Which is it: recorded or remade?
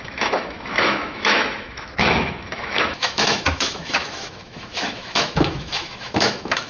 remade